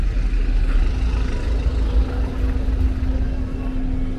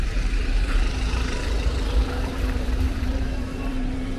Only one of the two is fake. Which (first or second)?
second